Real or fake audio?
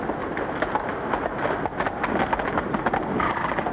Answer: real